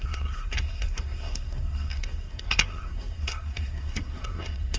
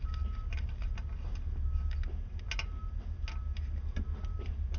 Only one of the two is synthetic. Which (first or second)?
first